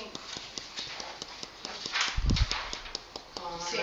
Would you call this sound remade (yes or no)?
no